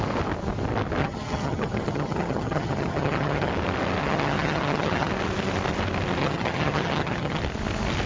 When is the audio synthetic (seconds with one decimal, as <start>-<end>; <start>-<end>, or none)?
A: 1.0-3.5; 4.0-5.1; 6.2-7.4